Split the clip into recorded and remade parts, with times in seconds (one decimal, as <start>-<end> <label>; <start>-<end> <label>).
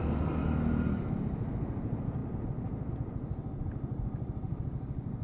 0.0-5.2 recorded